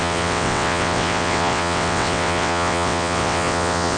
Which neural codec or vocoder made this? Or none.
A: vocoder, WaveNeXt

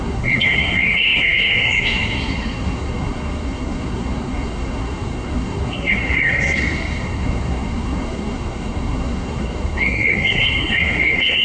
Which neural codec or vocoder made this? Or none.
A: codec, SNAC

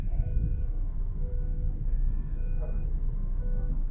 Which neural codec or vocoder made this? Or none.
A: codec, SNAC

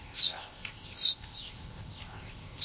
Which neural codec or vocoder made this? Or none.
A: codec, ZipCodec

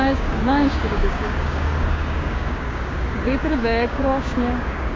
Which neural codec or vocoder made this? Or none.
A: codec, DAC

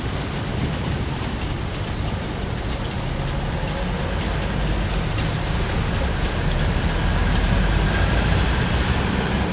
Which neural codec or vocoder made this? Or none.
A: none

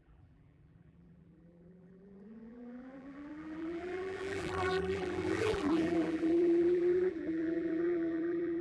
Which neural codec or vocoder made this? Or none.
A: vocoder, BigVGAN v2